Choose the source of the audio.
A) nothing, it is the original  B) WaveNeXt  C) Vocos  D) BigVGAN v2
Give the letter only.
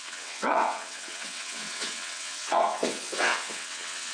B